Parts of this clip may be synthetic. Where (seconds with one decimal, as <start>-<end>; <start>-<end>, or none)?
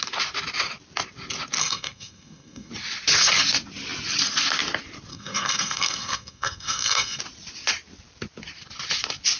1.6-2.7; 5.1-7.2